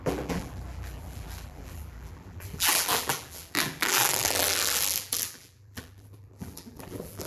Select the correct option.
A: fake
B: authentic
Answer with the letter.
A